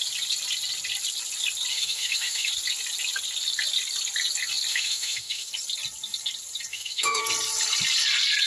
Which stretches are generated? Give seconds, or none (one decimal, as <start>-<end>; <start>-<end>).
1.7-2.5; 4.7-5.5; 6.7-7.2